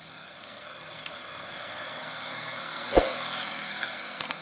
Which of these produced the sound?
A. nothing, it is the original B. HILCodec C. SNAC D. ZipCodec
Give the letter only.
C